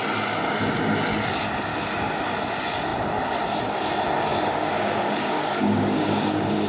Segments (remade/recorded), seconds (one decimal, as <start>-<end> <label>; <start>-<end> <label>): 0.0-1.7 recorded; 1.7-2.2 remade; 2.2-4.3 recorded; 4.3-6.7 remade